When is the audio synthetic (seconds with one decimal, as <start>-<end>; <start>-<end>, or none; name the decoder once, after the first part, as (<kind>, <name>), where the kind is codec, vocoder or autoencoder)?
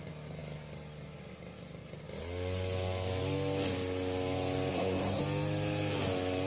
4.7-5.2 (codec, SNAC)